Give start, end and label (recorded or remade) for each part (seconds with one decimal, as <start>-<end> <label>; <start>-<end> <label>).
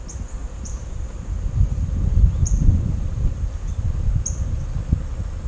0.0-0.4 recorded; 0.4-3.7 remade; 3.7-5.5 recorded